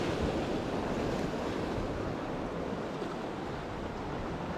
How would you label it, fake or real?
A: real